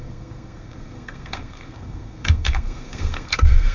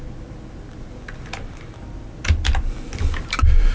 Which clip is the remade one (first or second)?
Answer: first